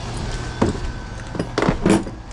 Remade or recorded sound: recorded